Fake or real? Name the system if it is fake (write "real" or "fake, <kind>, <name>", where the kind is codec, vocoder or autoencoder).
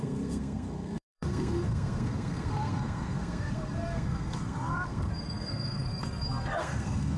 fake, codec, SNAC